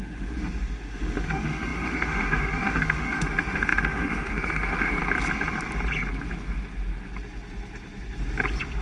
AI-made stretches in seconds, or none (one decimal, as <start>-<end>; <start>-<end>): 0.0-5.0